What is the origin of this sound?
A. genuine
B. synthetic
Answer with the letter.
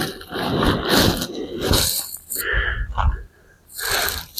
A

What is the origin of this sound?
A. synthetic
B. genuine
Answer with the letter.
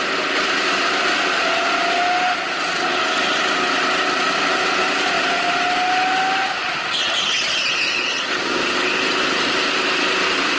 B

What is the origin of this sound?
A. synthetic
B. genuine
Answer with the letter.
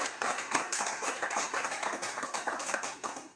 A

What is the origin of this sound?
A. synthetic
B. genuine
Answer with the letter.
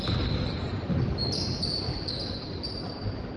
B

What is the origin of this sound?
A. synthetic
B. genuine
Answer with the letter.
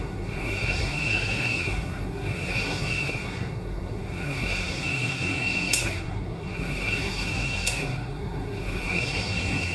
A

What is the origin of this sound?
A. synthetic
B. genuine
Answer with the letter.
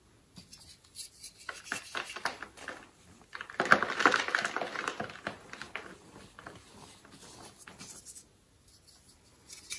B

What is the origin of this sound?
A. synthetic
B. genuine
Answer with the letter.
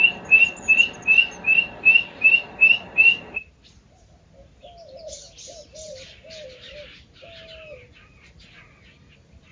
B